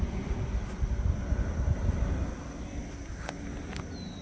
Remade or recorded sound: recorded